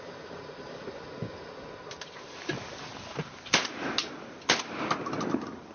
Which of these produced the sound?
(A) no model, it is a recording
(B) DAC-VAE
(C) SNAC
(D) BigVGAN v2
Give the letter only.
A